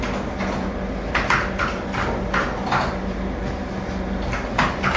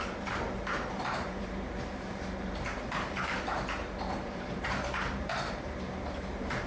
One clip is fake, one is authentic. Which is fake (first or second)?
second